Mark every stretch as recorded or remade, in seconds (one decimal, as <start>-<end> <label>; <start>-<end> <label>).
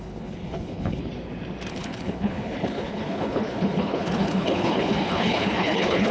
0.0-1.0 remade; 1.0-1.7 recorded; 1.7-6.1 remade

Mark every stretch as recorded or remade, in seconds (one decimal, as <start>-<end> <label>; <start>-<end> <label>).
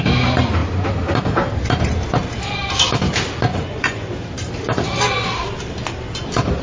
0.0-3.5 recorded; 3.5-4.1 remade; 4.1-6.6 recorded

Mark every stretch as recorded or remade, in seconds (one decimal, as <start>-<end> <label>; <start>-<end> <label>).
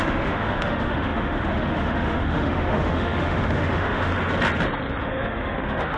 0.0-4.1 remade; 4.1-5.0 recorded; 5.0-6.0 remade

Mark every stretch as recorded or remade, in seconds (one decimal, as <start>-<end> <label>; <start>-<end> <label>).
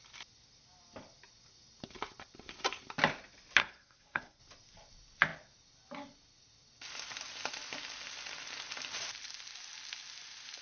0.0-3.6 recorded; 3.6-4.4 remade; 4.4-10.6 recorded